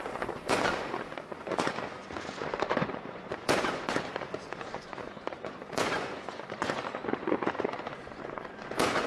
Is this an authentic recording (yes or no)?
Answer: no